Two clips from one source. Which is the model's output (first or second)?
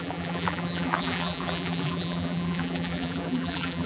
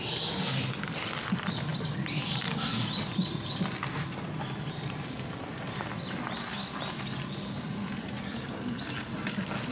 first